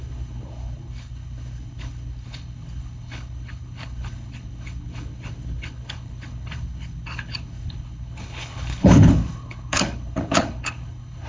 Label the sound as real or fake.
fake